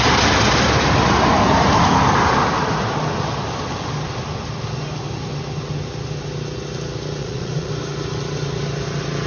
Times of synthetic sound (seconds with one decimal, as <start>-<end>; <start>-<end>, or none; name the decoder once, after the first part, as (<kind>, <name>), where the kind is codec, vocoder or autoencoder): 7.2-7.7 (vocoder, Vocos)

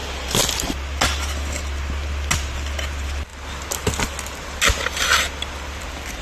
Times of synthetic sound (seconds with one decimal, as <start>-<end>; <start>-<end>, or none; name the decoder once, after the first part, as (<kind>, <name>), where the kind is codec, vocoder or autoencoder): none

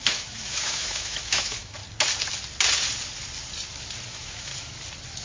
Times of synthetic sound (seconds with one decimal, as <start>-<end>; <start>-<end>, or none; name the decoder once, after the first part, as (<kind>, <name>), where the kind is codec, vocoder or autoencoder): 0.0-1.8 (autoencoder, DAC-VAE); 4.1-4.5